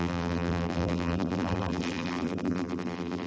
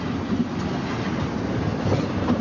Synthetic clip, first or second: first